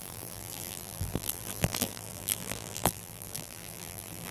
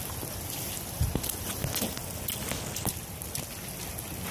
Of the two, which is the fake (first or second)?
first